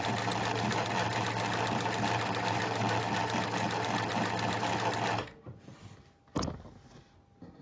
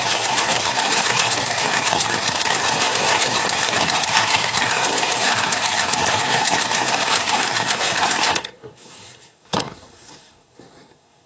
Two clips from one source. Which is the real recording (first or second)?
first